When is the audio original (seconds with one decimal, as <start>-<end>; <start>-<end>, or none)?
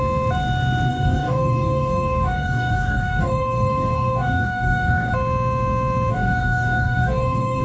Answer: 0.0-0.9; 5.1-6.1